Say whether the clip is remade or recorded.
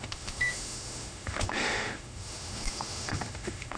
remade